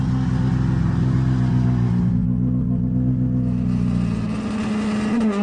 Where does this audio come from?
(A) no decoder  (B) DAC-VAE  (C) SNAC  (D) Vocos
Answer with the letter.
A